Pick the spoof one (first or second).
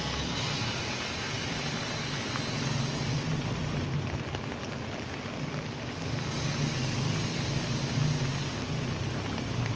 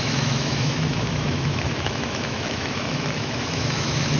second